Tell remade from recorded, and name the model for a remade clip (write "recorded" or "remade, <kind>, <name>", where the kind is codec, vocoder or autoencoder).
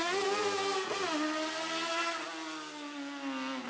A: recorded